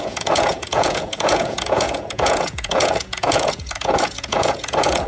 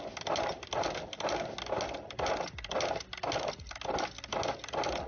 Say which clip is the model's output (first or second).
first